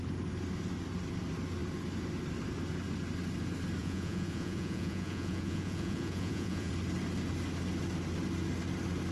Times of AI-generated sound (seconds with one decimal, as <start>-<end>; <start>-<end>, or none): 3.8-6.7